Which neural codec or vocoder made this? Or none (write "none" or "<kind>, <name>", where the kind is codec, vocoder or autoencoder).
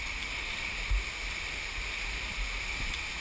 none